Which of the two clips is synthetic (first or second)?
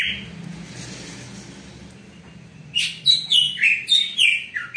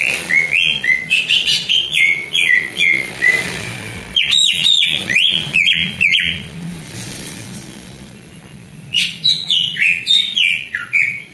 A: second